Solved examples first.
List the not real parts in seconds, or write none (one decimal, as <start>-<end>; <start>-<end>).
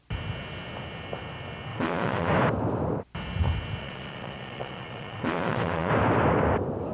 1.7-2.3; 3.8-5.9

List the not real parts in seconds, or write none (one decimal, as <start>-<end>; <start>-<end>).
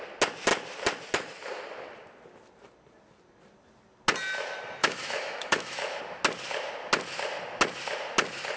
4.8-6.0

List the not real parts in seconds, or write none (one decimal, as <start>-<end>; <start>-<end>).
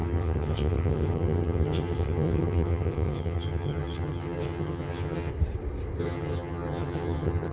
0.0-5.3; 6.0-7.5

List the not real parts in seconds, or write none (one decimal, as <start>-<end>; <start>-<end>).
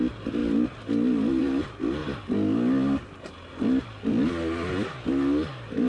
none